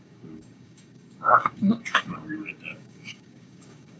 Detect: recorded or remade remade